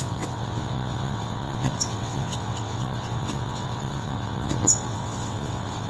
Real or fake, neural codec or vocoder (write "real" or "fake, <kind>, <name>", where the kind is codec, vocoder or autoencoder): fake, vocoder, WaveNeXt